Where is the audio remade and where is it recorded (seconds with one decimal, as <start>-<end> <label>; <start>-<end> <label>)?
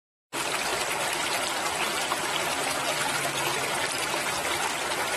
0.0-5.2 remade